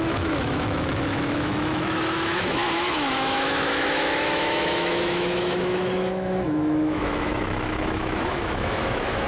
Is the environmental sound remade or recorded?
remade